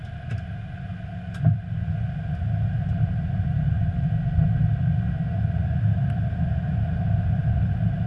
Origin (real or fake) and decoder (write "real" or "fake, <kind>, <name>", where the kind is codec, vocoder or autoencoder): real